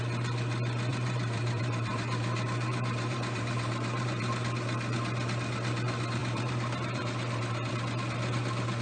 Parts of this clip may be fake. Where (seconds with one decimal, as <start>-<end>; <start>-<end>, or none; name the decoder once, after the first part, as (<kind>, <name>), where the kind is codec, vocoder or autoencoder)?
0.9-4.2 (vocoder, BigVGAN v2); 6.2-7.7